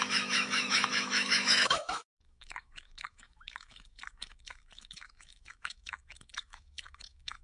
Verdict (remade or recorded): remade